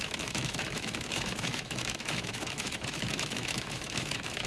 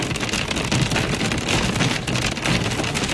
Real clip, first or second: second